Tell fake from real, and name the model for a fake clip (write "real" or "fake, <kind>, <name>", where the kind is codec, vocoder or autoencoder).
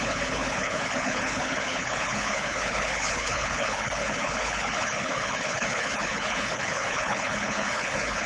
fake, codec, HILCodec